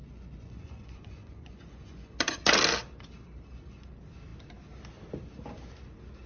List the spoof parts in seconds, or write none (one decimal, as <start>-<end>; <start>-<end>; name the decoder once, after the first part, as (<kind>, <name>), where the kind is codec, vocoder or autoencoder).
0.0-2.4 (vocoder, Vocos)